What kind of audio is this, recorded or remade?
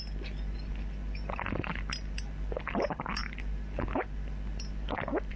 recorded